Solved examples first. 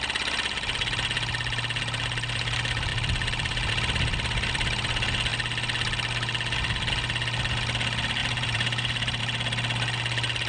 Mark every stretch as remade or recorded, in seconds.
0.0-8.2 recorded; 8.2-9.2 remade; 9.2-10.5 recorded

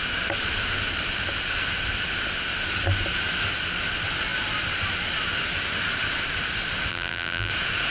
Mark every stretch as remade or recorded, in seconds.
0.0-6.9 recorded; 6.9-7.5 remade; 7.5-7.9 recorded